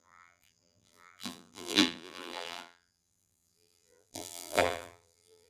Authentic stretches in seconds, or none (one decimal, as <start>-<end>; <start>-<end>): none